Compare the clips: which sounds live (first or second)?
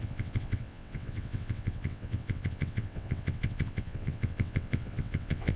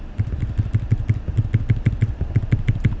second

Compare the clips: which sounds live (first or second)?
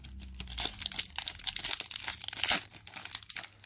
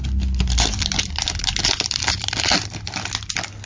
first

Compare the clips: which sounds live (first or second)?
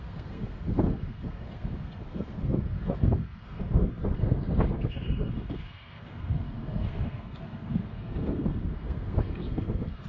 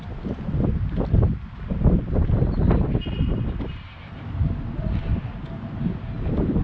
second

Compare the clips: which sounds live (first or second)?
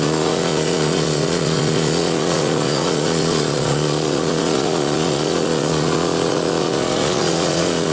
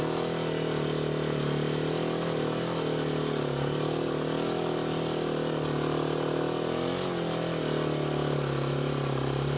second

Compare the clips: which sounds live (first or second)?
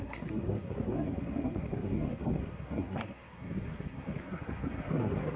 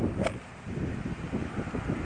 second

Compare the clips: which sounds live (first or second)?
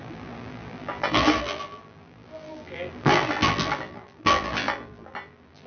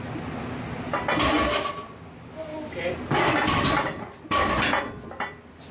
second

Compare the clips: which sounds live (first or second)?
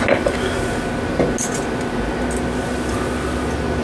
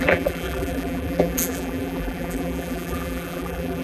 first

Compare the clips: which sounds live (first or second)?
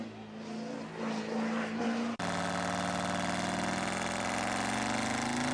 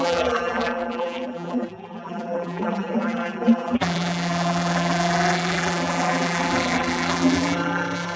first